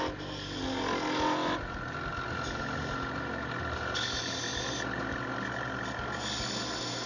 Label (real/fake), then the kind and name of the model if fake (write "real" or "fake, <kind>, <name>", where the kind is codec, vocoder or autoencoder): real